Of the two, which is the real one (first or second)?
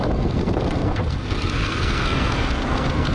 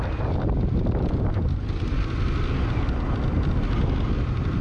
second